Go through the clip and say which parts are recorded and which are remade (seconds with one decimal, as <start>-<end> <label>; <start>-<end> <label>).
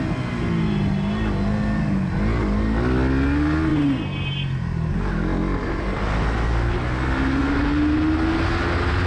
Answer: 0.0-9.1 recorded